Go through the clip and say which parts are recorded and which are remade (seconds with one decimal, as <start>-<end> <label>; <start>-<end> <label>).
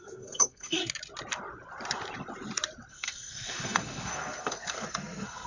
0.0-0.8 remade; 0.8-2.9 recorded; 2.9-5.5 remade